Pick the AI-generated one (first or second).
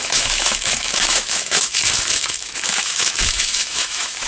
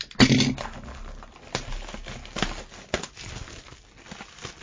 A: first